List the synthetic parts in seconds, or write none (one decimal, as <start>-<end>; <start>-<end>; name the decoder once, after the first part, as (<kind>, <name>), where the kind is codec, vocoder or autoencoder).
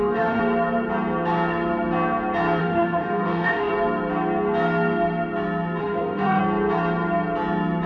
0.0-0.4 (autoencoder, DAC-VAE); 2.6-3.7; 5.8-6.4